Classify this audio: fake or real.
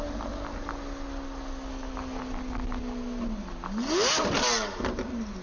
real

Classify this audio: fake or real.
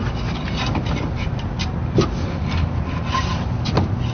real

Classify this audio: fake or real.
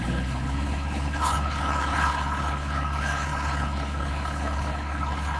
fake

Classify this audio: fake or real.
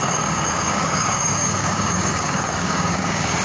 fake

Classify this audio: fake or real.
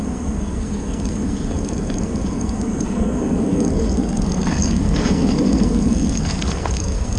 fake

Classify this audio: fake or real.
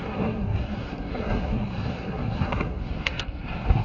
fake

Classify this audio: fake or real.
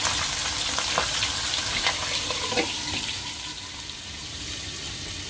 real